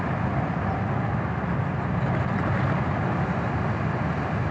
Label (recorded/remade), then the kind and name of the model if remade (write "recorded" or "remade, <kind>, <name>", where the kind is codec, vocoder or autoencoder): recorded